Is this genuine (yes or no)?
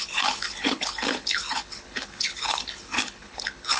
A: no